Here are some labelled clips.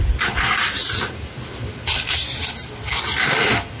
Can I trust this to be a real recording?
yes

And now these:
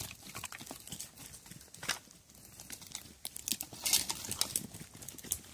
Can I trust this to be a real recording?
yes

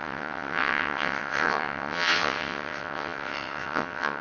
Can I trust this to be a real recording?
no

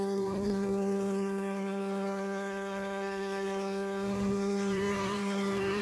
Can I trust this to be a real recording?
no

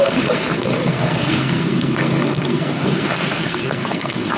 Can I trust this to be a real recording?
no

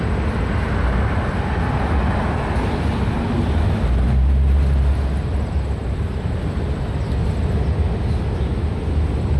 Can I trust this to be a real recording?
yes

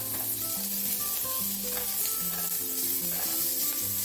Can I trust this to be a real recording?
yes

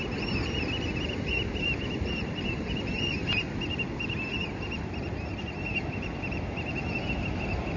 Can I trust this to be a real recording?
yes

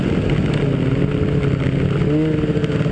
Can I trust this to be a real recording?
yes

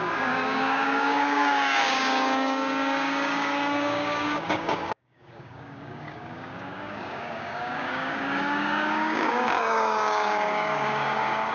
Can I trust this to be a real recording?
no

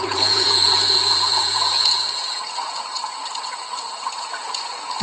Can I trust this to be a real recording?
no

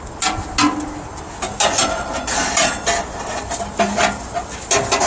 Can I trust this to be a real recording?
yes